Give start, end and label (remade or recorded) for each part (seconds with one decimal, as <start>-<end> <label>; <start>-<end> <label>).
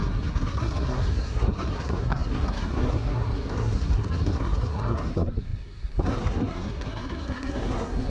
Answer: 0.0-8.1 remade